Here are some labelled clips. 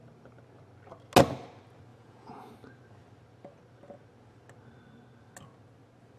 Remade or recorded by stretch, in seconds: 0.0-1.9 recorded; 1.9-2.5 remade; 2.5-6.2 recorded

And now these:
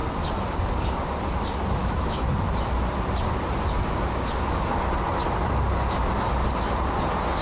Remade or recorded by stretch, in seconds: 0.0-1.8 recorded; 1.8-2.3 remade; 2.3-7.4 recorded

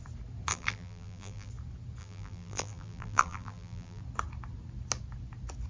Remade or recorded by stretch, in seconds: 0.0-0.5 recorded; 0.5-1.5 remade; 1.5-2.0 recorded; 2.0-4.0 remade; 4.0-5.7 recorded

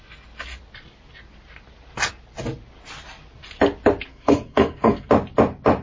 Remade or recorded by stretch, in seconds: 0.0-4.1 recorded; 4.1-5.1 remade; 5.1-5.8 recorded

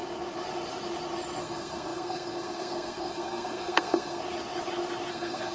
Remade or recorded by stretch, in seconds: 0.0-1.4 recorded; 1.4-4.2 remade; 4.2-5.1 recorded; 5.1-5.5 remade

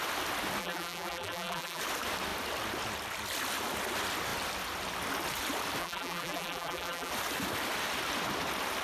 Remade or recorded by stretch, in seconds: 0.0-0.6 recorded; 0.6-1.8 remade; 1.8-5.8 recorded; 5.8-7.1 remade; 7.1-8.8 recorded

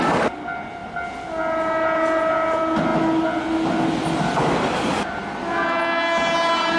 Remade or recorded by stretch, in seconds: 0.0-6.8 recorded

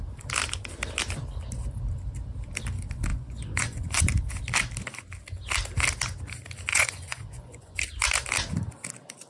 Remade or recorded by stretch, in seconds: 0.0-3.1 recorded; 3.1-4.0 remade; 4.0-6.7 recorded; 6.7-7.8 remade; 7.8-9.3 recorded